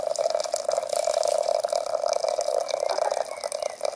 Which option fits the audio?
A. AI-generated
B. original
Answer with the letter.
B